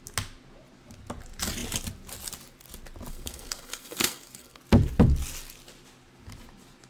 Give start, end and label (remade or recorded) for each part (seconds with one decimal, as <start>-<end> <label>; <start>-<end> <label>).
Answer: 0.0-3.1 recorded; 3.1-4.6 remade; 4.6-6.9 recorded